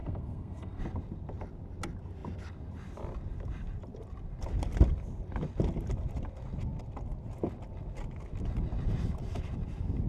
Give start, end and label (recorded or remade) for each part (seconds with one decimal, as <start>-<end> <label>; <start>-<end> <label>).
0.0-0.8 remade; 0.8-10.1 recorded